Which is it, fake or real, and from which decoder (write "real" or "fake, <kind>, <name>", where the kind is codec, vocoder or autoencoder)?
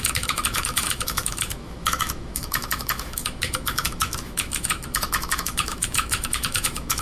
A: fake, autoencoder, DAC-VAE